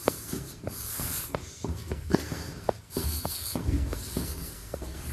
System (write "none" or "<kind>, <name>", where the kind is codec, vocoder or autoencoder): codec, SNAC